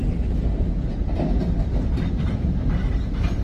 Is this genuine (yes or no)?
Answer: no